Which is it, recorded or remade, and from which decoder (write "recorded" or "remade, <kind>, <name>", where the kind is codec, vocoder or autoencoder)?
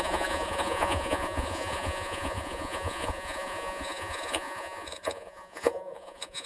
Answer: remade, vocoder, Vocos